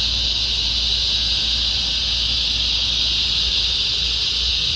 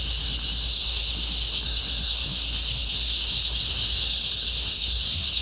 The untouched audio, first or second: first